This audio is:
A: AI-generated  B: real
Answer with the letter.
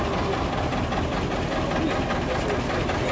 B